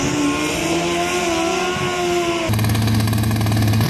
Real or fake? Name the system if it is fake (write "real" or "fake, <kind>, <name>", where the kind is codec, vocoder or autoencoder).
real